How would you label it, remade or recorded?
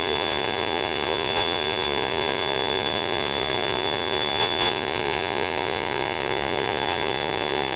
remade